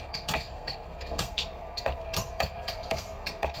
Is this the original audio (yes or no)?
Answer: no